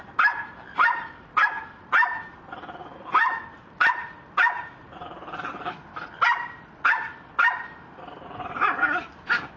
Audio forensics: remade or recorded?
recorded